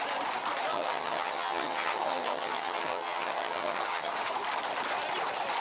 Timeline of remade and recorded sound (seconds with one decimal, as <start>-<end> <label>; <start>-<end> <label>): 0.0-0.7 recorded; 0.7-4.1 remade; 4.1-5.6 recorded